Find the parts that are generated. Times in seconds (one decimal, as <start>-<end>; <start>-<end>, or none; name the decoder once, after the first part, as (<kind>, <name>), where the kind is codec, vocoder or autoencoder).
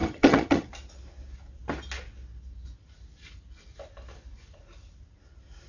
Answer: 0.0-0.7 (vocoder, HiFi-GAN)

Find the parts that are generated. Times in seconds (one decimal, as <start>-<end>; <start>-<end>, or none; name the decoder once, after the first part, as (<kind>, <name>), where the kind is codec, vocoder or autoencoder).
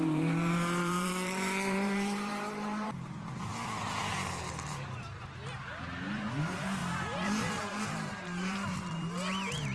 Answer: 0.0-9.7 (vocoder, BigVGAN v2)